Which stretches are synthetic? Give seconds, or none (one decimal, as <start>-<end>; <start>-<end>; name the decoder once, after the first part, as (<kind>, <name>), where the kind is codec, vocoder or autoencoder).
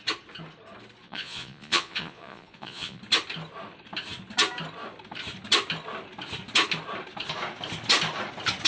1.0-3.0 (vocoder, Vocos)